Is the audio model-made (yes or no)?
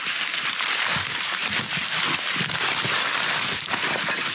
no